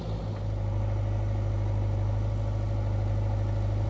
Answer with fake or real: real